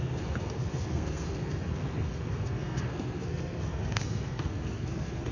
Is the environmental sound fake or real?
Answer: fake